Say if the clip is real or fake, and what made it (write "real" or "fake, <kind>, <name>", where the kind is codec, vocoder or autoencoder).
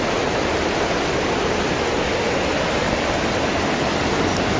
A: real